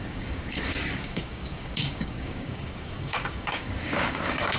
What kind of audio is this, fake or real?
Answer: fake